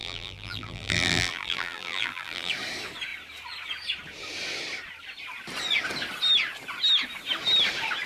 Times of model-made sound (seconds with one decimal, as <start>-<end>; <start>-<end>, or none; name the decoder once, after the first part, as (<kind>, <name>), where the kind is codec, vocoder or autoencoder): 0.0-2.5 (vocoder, BigVGAN v2)